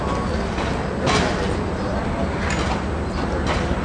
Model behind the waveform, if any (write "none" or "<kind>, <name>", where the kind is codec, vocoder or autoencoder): none